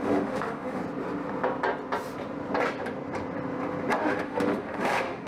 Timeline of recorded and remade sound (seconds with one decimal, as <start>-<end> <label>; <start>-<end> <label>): 0.0-0.8 remade; 0.8-4.0 recorded; 4.0-5.3 remade